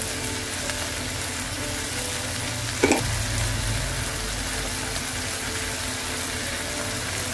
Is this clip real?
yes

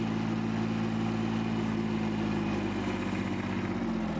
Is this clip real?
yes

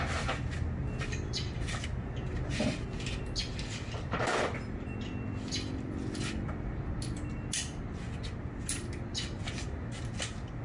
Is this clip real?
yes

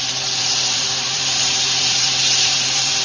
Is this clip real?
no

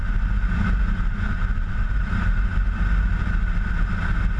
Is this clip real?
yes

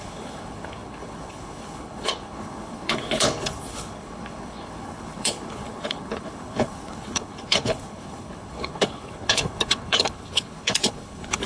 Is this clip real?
no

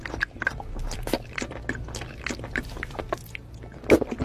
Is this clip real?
yes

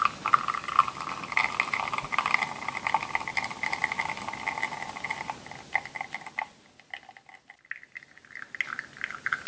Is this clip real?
yes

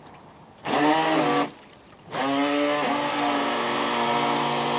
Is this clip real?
yes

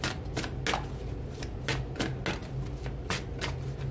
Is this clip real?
yes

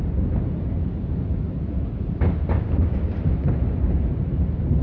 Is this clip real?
yes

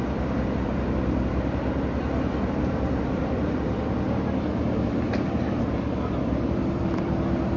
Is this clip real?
no